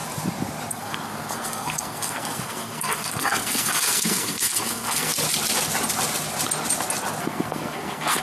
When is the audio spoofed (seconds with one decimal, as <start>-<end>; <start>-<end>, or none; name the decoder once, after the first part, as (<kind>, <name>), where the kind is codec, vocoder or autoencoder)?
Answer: 0.7-5.1 (codec, SNAC); 7.2-8.2